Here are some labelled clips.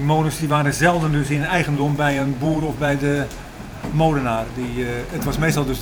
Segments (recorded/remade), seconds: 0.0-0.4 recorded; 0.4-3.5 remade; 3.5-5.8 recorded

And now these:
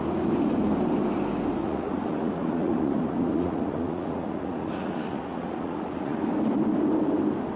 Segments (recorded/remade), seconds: 0.0-1.6 recorded; 1.6-6.2 remade; 6.2-7.6 recorded

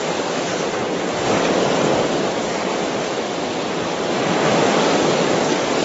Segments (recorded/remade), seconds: 0.0-0.5 remade; 0.5-1.4 recorded; 1.4-2.7 remade; 2.7-4.7 recorded; 4.7-5.8 remade

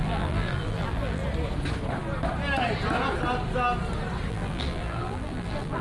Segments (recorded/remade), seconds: 0.0-1.2 remade; 1.2-4.3 recorded; 4.3-5.8 remade

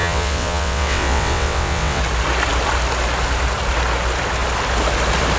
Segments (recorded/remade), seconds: 0.0-2.0 remade; 2.0-5.4 recorded

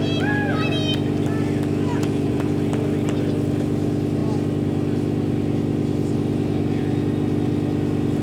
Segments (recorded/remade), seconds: 0.0-1.9 recorded; 1.9-2.5 remade; 2.5-8.2 recorded

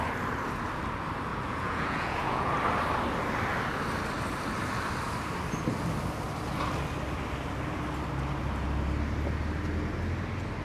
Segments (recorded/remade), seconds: 0.0-1.3 recorded; 1.3-2.5 remade; 2.5-10.6 recorded

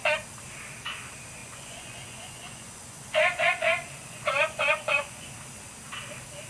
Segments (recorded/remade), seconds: 0.0-1.4 recorded; 1.4-5.3 remade; 5.3-6.5 recorded